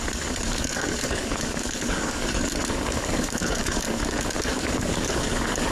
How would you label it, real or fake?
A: fake